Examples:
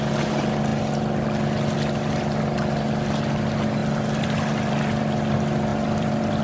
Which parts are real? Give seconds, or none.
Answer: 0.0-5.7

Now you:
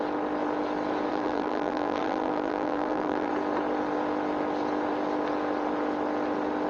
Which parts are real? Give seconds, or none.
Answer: 0.0-1.1; 3.3-6.7